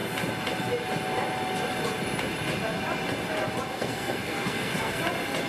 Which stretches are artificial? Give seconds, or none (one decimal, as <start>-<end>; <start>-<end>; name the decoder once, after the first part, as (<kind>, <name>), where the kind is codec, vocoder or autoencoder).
3.7-5.0 (codec, SNAC)